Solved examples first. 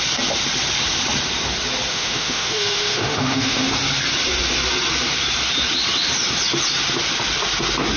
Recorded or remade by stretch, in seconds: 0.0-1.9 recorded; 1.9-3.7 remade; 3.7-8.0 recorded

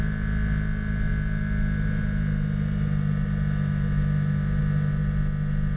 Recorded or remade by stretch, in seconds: 0.0-5.8 recorded

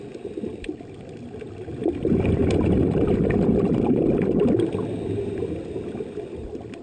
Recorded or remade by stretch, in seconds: 0.0-6.8 recorded

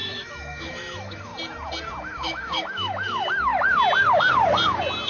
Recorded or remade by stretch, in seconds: 0.0-1.3 remade; 1.3-2.0 recorded; 2.0-3.5 remade; 3.5-5.1 recorded